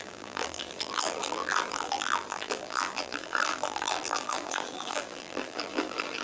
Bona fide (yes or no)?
no